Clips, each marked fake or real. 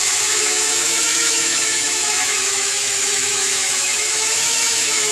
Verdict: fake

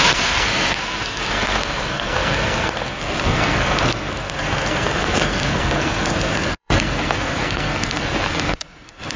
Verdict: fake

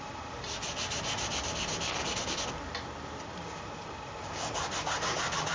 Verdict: real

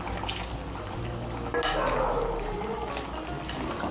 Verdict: real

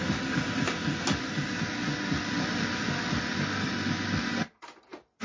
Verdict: real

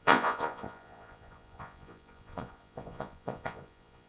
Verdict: fake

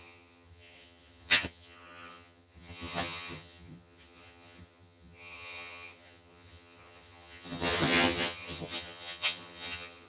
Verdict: fake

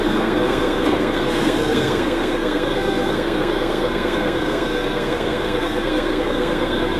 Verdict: fake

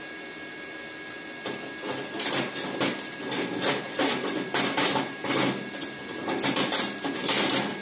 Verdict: real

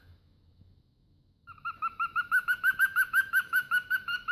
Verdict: fake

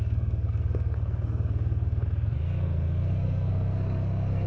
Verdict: fake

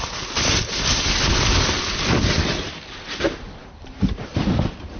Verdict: real